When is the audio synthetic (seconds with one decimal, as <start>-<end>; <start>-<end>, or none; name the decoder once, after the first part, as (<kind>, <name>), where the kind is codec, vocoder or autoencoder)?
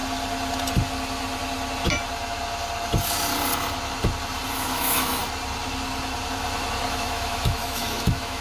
4.5-5.2 (autoencoder, DAC-VAE); 6.9-8.4